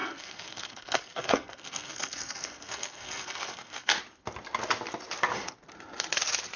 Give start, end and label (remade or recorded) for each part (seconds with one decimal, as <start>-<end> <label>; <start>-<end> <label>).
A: 0.0-4.0 remade; 4.0-6.6 recorded